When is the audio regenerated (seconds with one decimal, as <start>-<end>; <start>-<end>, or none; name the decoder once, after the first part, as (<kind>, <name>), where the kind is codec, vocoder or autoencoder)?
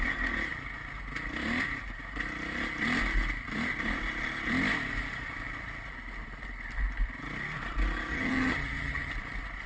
8.1-9.1 (vocoder, HiFi-GAN)